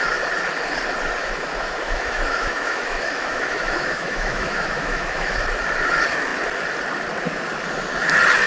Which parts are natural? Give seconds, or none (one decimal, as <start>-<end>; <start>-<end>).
0.0-1.2; 5.3-8.5